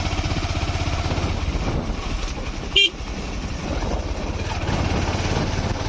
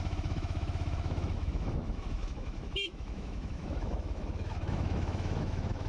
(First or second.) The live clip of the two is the first